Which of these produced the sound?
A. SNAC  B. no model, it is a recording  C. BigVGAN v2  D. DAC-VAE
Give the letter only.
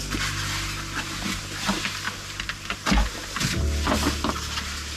B